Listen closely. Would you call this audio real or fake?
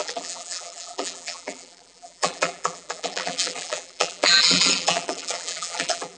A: fake